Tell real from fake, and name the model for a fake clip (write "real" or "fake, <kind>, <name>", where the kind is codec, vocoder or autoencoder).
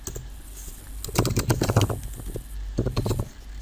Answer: real